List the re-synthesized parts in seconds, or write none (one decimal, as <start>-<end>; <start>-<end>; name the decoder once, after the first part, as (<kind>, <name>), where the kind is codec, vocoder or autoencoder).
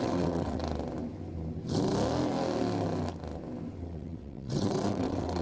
0.0-0.6 (vocoder, WaveNeXt); 3.8-5.4